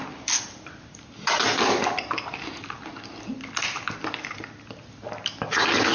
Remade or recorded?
recorded